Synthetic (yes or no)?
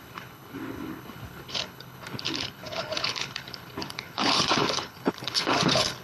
yes